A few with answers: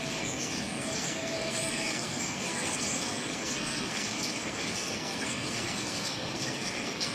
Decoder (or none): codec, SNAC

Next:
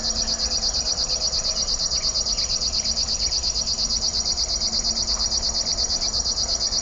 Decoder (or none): none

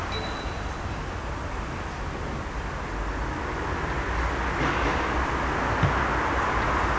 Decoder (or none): none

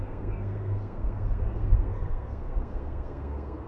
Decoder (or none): codec, SNAC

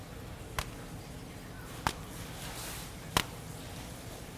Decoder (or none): none